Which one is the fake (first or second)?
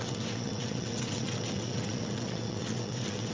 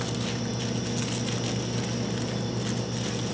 first